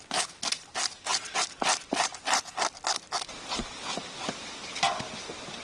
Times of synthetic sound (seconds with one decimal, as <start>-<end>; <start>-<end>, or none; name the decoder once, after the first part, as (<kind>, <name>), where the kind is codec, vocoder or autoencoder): none